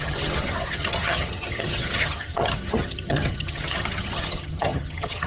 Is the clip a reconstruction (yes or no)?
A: yes